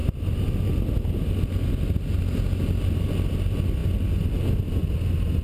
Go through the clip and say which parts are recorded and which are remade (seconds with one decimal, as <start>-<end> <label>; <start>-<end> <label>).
0.0-5.4 recorded